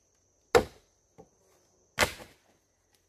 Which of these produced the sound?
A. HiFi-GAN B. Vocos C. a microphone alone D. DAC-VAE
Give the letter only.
C